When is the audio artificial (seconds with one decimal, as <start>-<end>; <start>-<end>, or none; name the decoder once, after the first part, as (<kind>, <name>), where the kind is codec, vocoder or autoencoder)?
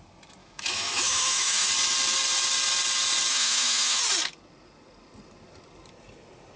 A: 0.4-1.7 (autoencoder, DAC-VAE); 3.3-4.0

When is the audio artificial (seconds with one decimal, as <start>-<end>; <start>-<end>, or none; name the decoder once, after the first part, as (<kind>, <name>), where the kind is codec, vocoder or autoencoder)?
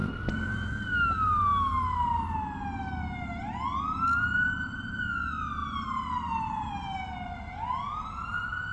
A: none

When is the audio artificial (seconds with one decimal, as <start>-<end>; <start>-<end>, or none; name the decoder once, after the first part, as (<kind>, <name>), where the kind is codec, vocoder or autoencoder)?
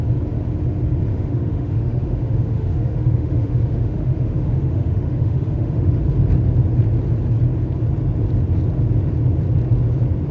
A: 1.1-6.0 (autoencoder, DAC-VAE)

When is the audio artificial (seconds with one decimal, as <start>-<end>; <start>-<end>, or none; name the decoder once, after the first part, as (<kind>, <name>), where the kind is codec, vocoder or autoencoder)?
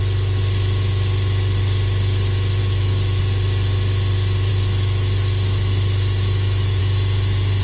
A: 2.6-3.2 (autoencoder, DAC-VAE); 4.5-6.8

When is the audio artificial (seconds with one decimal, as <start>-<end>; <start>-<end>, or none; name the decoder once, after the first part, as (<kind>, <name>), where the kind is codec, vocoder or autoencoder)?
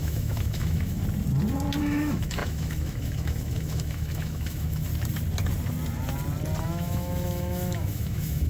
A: 0.0-1.0 (autoencoder, DAC-VAE); 1.8-4.9; 6.6-8.5